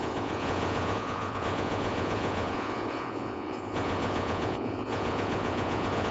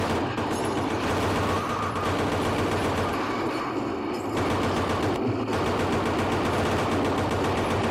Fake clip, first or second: first